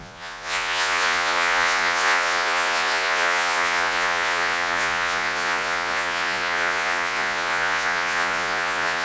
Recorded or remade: remade